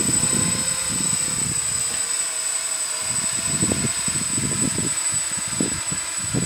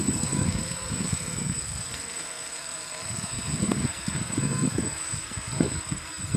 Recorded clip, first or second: first